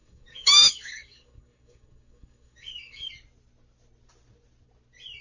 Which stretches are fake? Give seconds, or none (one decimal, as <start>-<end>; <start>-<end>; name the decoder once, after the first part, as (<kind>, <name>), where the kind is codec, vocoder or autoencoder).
0.0-3.1 (codec, DAC)